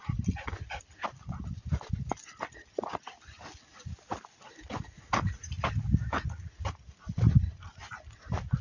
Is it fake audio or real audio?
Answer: real